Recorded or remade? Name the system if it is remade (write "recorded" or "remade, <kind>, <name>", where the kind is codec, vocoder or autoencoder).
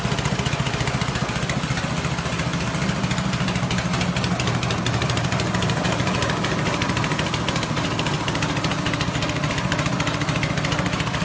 recorded